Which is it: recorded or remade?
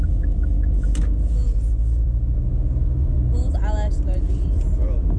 recorded